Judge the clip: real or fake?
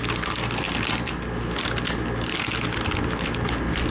real